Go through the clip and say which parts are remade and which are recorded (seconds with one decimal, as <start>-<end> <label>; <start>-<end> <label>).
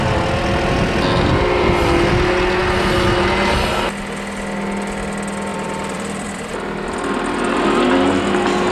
0.0-5.5 recorded; 5.5-6.8 remade; 6.8-8.7 recorded